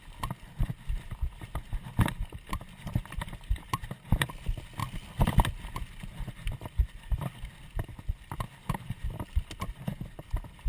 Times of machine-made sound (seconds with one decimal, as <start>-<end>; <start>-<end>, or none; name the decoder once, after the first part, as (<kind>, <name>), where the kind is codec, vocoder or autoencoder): none